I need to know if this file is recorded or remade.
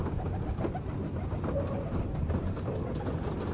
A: recorded